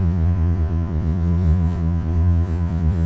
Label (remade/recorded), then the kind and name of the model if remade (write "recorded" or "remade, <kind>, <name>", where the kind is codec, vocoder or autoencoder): remade, vocoder, Vocos